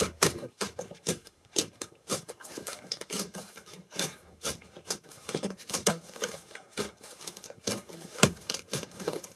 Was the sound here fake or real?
fake